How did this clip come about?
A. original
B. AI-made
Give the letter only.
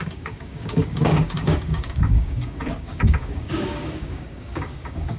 B